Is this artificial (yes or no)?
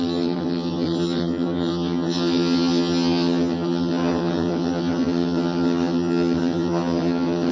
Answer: yes